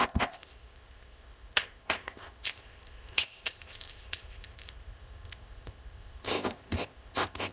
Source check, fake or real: fake